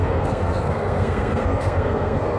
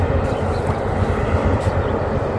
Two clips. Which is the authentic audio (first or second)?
second